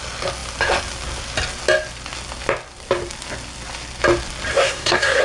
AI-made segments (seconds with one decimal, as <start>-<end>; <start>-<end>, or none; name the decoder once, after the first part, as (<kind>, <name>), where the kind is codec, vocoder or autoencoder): 4.5-5.2 (codec, SNAC)